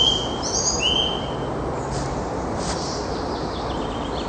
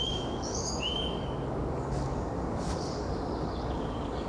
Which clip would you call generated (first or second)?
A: second